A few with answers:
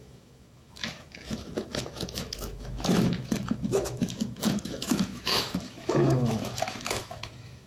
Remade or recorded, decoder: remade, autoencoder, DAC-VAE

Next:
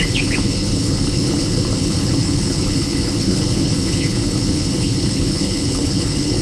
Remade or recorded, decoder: remade, codec, HILCodec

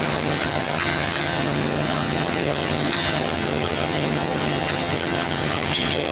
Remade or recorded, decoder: remade, vocoder, HiFi-GAN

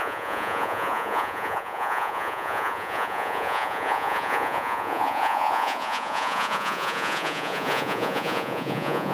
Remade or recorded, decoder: remade, vocoder, Vocos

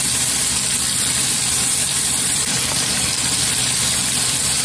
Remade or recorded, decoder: remade, vocoder, BigVGAN v2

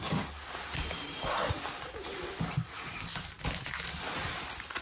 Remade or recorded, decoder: recorded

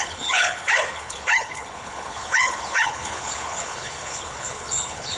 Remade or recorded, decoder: remade, codec, HILCodec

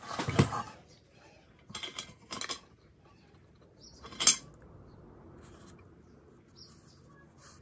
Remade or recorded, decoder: recorded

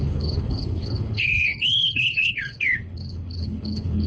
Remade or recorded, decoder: remade, codec, HILCodec